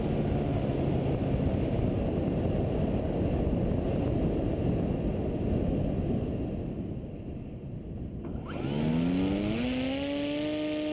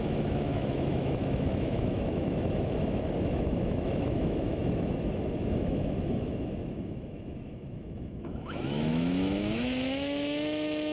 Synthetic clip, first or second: second